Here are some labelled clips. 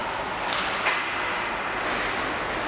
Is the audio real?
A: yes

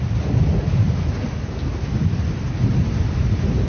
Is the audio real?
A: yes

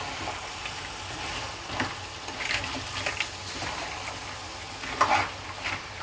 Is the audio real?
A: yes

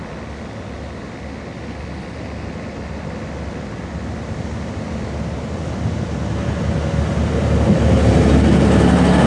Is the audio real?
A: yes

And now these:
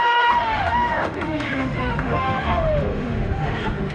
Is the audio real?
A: no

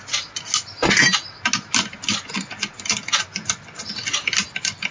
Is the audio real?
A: yes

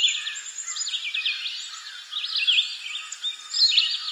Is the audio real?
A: yes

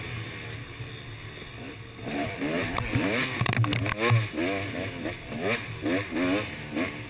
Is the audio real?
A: yes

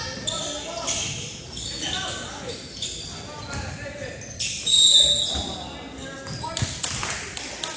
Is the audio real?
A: yes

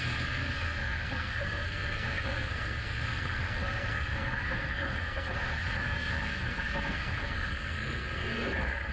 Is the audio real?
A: no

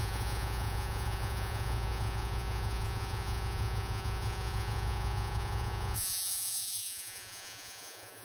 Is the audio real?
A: no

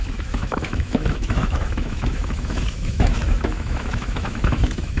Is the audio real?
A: no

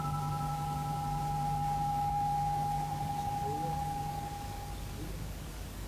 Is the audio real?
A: no